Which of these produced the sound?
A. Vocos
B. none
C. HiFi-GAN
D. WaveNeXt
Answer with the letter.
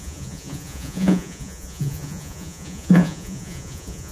A